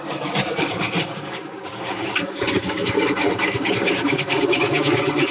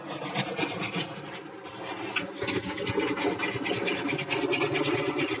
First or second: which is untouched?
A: second